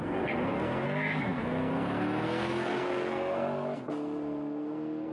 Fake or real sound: fake